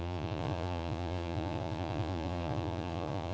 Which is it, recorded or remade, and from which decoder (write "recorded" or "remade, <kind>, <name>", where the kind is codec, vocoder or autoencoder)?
remade, vocoder, Vocos